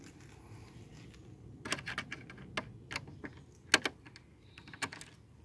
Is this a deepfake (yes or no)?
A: no